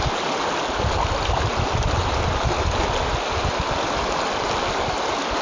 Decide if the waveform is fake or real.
real